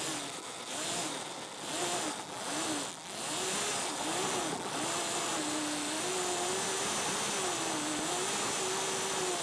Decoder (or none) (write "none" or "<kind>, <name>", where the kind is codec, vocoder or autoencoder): none